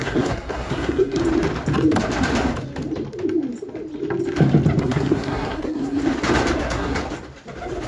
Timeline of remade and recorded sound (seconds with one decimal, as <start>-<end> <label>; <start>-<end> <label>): 0.0-1.2 remade; 1.2-4.8 recorded; 4.8-6.0 remade; 6.0-6.6 recorded; 6.6-7.0 remade; 7.0-7.9 recorded

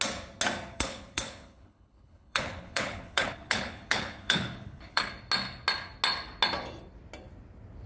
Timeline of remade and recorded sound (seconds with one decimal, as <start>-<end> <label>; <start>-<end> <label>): 0.0-0.7 recorded; 0.7-5.1 remade; 5.1-7.9 recorded

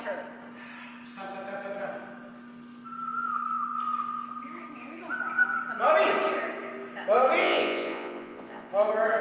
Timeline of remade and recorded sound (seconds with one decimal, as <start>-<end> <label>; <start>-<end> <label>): 0.0-7.4 recorded; 7.4-8.7 remade; 8.7-9.2 recorded